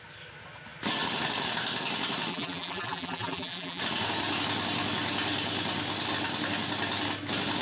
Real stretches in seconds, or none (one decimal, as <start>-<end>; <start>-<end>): 0.0-2.3; 3.8-7.6